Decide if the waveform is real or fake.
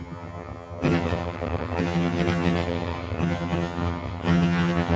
fake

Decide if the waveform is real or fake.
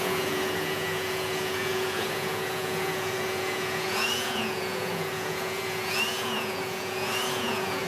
fake